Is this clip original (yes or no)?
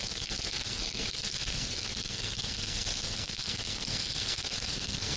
no